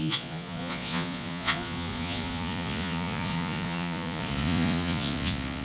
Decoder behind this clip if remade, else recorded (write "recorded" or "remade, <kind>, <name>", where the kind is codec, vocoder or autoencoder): remade, vocoder, Vocos